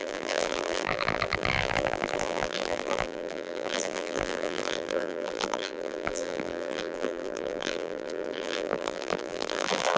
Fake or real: fake